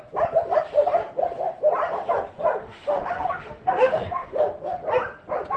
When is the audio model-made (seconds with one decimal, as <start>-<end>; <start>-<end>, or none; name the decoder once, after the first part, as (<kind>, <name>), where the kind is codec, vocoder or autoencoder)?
2.6-4.4 (autoencoder, DAC-VAE)